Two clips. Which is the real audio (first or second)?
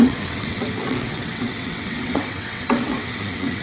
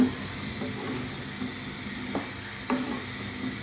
second